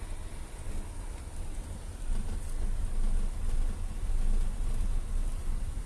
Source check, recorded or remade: recorded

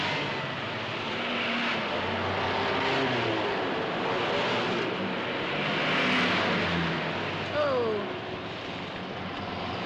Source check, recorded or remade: recorded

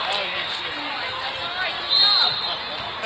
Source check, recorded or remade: recorded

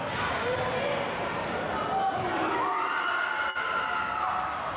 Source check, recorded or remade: recorded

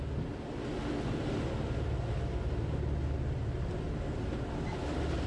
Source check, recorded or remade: recorded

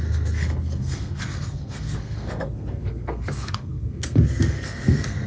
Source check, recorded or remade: remade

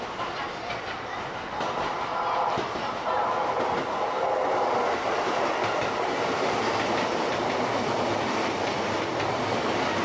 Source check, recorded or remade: recorded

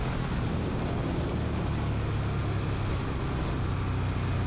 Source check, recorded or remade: recorded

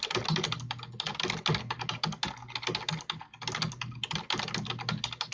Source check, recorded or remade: recorded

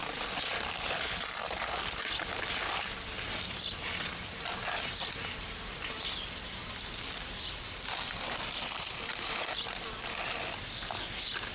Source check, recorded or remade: recorded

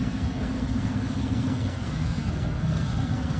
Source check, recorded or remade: remade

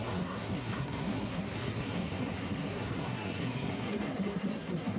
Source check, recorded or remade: remade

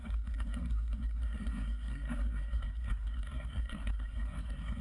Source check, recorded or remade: remade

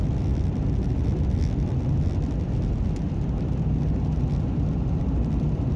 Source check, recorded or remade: recorded